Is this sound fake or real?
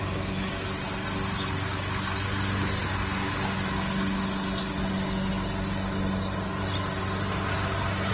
real